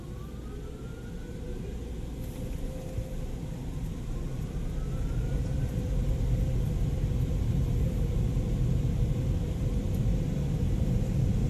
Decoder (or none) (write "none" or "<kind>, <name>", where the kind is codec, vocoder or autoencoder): none